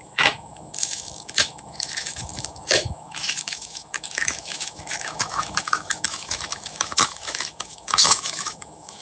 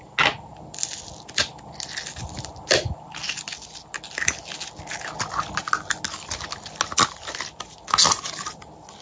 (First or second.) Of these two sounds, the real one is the second